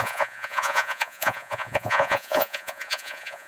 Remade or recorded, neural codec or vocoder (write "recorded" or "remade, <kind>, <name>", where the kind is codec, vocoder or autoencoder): remade, vocoder, Vocos